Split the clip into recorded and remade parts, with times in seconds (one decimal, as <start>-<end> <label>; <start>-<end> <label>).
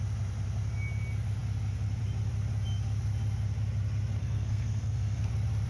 0.0-4.2 recorded; 4.2-5.3 remade; 5.3-5.7 recorded